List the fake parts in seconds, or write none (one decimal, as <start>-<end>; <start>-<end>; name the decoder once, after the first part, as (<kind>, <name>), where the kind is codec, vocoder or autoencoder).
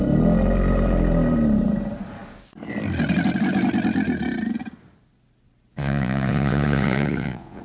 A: 5.7-7.6 (vocoder, Vocos)